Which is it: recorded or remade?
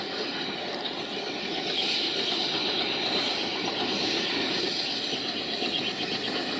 recorded